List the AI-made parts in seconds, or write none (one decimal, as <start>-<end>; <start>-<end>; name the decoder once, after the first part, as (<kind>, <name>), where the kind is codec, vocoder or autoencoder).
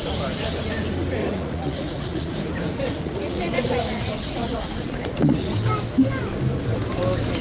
1.2-5.6 (vocoder, Vocos)